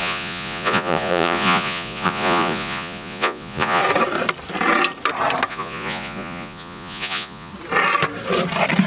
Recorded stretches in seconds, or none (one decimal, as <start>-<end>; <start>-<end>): 3.8-5.5; 7.5-8.9